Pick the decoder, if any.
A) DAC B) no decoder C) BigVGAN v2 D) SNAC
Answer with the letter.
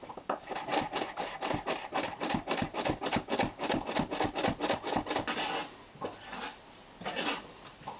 B